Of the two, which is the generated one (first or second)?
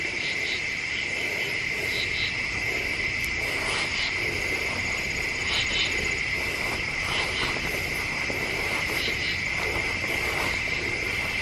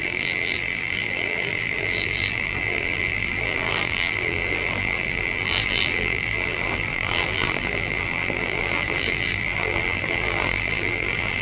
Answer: second